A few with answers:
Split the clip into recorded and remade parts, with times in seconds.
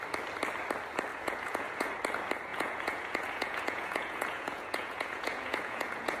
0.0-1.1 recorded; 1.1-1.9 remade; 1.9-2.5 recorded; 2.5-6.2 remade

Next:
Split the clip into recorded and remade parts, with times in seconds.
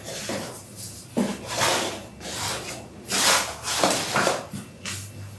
0.0-5.4 recorded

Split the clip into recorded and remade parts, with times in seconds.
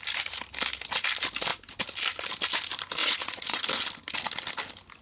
0.0-3.0 recorded; 3.0-3.6 remade; 3.6-5.0 recorded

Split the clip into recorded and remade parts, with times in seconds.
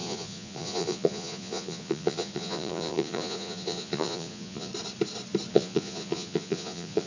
0.0-4.7 remade; 4.7-5.5 recorded; 5.5-7.1 remade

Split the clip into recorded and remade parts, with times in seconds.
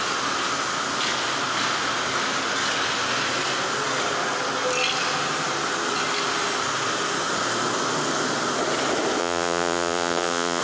0.0-9.2 recorded; 9.2-10.6 remade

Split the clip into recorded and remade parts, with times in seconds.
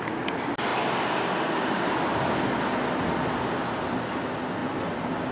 0.0-5.3 recorded